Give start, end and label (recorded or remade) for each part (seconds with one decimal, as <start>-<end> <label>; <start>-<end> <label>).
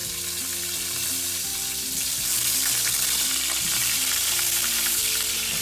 0.0-5.6 recorded